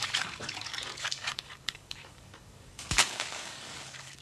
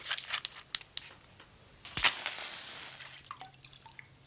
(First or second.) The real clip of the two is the second